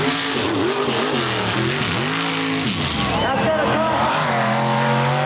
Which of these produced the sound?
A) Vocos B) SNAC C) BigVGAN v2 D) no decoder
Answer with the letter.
D